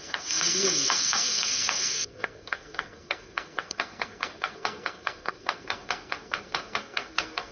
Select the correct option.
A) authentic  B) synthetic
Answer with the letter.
B